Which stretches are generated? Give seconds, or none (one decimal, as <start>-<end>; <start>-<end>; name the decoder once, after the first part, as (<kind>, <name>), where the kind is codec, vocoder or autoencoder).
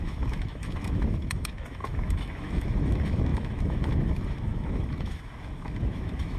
0.0-6.4 (autoencoder, DAC-VAE)